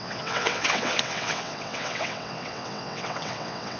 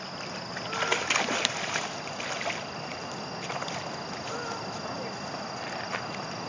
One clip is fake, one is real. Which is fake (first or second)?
first